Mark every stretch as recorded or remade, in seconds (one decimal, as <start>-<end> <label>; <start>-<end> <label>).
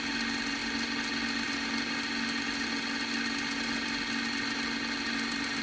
0.0-5.6 recorded